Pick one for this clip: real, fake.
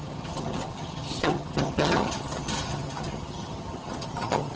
fake